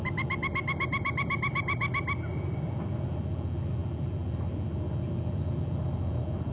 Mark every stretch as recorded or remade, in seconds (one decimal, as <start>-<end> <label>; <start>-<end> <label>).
0.0-6.5 recorded

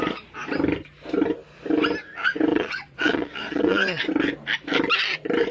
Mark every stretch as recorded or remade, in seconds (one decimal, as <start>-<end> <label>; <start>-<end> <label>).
0.0-2.5 recorded; 2.5-4.0 remade; 4.0-5.5 recorded